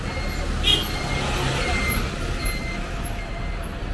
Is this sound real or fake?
real